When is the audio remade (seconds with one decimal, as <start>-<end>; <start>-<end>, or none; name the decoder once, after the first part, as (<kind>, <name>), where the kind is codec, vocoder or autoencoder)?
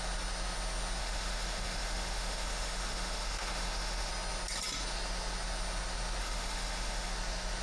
1.0-4.1 (autoencoder, DAC-VAE); 6.2-7.1